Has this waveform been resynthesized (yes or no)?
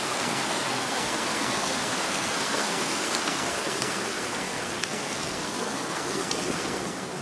yes